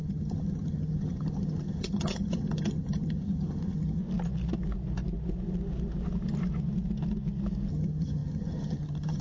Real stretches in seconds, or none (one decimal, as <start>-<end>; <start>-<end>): 4.0-7.7